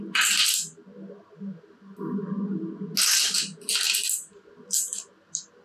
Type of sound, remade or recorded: recorded